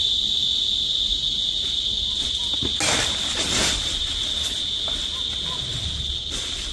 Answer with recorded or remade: recorded